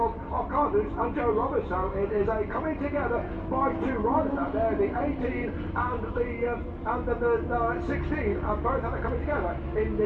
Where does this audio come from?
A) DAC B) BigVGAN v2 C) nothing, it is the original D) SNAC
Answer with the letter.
C